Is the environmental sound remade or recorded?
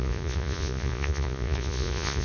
remade